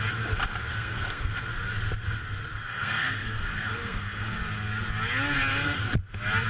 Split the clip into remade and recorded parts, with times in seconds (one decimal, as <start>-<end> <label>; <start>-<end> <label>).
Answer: 0.0-0.7 recorded; 0.7-1.4 remade; 1.4-2.5 recorded; 2.5-4.3 remade; 4.3-6.5 recorded